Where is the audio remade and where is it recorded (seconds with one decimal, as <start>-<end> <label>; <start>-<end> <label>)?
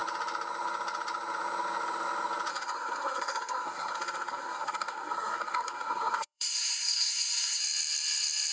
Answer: 0.0-2.5 recorded; 2.5-7.6 remade; 7.6-8.5 recorded